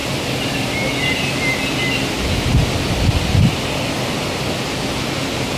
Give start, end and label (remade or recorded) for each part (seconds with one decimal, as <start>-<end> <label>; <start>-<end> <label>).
0.0-5.6 recorded

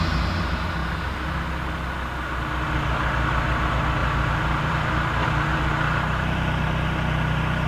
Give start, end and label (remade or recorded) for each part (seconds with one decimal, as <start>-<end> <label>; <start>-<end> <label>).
0.0-4.0 recorded; 4.0-6.7 remade; 6.7-7.7 recorded

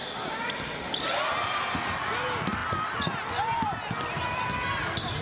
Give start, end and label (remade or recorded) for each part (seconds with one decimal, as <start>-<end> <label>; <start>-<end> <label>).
0.0-2.6 recorded; 2.6-5.2 remade

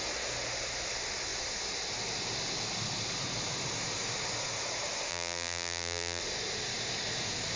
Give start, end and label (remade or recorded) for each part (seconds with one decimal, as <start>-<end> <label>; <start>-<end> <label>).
0.0-5.1 recorded; 5.1-6.2 remade; 6.2-7.6 recorded

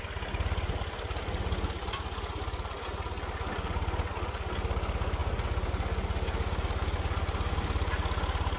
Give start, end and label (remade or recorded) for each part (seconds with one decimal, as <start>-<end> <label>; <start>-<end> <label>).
0.0-8.6 recorded

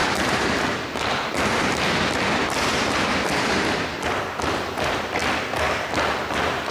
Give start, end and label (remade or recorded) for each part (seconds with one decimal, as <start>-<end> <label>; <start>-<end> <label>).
0.0-6.7 recorded

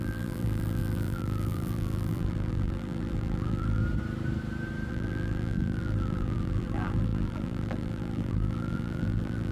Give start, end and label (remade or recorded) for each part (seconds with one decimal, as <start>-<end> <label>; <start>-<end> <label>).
0.0-3.8 remade; 3.8-4.9 recorded; 4.9-9.5 remade